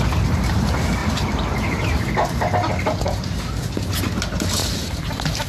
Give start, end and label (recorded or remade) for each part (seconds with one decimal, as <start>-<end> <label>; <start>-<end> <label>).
0.0-1.0 recorded; 1.0-2.4 remade; 2.4-4.6 recorded; 4.6-5.1 remade; 5.1-5.5 recorded